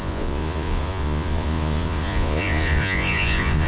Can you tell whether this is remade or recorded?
remade